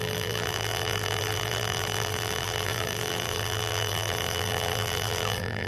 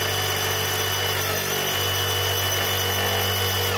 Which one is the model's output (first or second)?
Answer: first